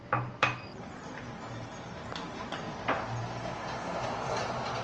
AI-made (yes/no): no